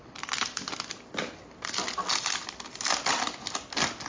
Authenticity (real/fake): real